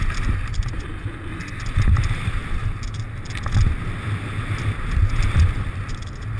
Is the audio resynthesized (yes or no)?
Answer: no